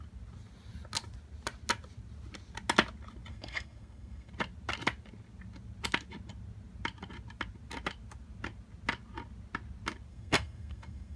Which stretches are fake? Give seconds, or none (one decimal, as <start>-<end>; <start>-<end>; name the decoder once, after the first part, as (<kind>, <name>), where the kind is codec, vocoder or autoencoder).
3.3-4.3 (codec, SNAC); 10.1-11.2